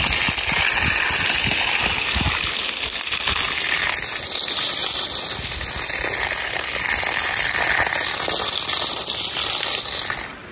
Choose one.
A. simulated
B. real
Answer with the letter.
B